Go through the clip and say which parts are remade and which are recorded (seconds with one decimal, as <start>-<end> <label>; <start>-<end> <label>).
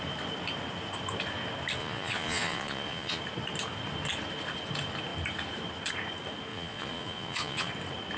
0.0-1.8 recorded; 1.8-3.2 remade; 3.2-6.5 recorded; 6.5-7.7 remade; 7.7-8.2 recorded